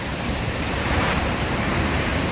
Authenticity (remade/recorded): remade